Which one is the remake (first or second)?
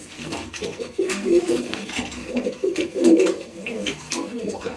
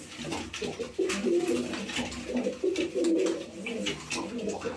first